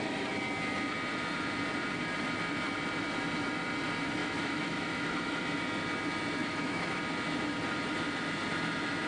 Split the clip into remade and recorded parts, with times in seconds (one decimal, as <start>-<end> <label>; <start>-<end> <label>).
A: 0.0-4.2 recorded; 4.2-5.4 remade; 5.4-6.4 recorded; 6.4-7.0 remade; 7.0-9.1 recorded